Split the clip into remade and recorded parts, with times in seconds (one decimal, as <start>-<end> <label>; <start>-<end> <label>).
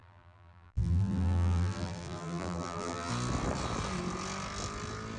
0.0-3.1 remade; 3.1-5.2 recorded